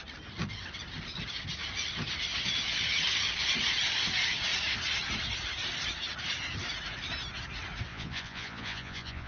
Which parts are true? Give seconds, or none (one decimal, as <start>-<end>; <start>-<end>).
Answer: 0.0-7.9